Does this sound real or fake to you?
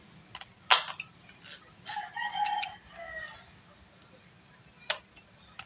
real